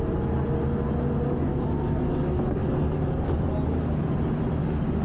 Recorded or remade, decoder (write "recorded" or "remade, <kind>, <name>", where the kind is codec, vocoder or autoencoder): recorded